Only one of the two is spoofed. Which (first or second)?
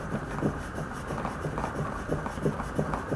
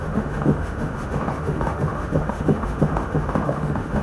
second